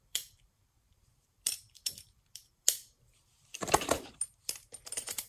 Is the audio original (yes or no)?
no